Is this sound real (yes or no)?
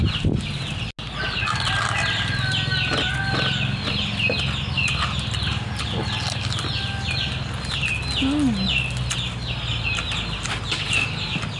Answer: yes